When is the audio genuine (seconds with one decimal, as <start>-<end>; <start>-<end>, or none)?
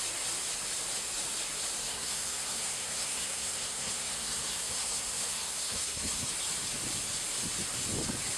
0.0-1.8; 6.3-8.4